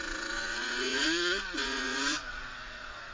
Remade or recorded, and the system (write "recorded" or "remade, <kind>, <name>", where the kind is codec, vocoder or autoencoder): remade, vocoder, Vocos